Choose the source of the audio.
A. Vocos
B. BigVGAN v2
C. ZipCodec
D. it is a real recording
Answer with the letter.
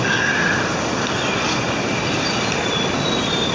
D